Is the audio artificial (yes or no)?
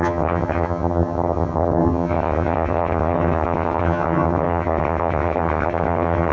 yes